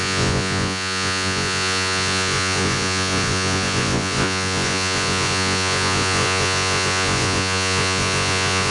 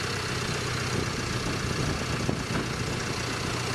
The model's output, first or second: first